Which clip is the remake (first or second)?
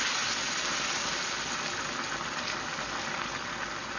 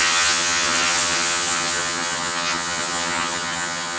second